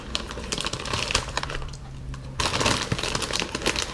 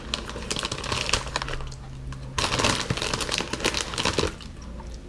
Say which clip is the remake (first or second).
first